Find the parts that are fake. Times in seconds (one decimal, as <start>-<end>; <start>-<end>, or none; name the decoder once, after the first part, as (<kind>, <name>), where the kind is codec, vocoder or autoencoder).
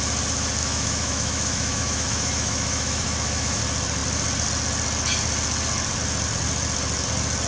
0.6-3.6 (autoencoder, DAC-VAE)